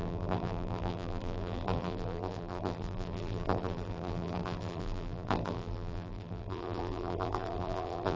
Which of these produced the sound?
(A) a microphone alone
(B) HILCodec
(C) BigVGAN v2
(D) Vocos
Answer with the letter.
C